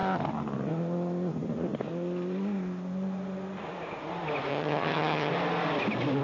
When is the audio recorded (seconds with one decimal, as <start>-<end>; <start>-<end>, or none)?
0.0-4.5; 5.3-6.2